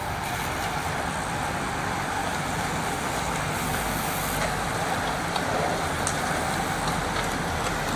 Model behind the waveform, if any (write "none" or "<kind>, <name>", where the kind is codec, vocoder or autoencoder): none